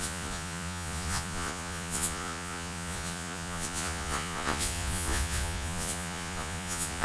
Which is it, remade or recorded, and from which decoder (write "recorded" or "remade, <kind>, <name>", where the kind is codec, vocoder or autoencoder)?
remade, vocoder, Vocos